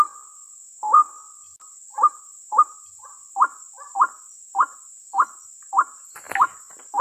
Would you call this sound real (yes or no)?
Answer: yes